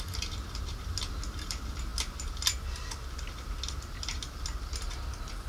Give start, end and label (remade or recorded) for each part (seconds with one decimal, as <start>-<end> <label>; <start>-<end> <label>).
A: 0.0-5.5 recorded